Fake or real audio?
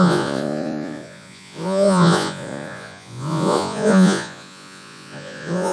fake